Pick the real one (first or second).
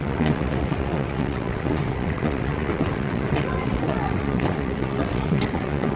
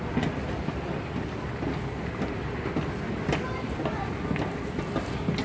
second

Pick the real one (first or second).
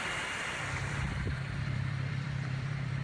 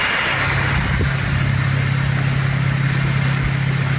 second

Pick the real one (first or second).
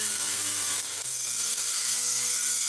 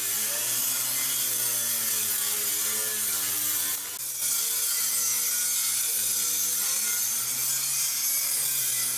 second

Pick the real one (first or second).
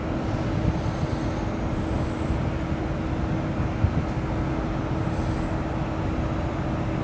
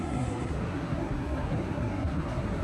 first